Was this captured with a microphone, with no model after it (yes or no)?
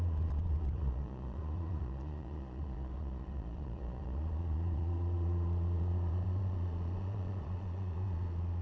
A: no